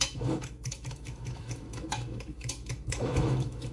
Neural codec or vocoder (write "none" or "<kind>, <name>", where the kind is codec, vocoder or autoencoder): autoencoder, DAC-VAE